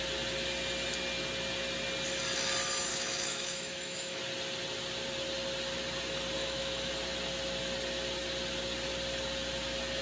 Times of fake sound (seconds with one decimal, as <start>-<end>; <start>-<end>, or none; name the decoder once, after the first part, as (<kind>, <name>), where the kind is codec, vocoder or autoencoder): 2.9-4.2 (autoencoder, DAC-VAE); 6.4-6.9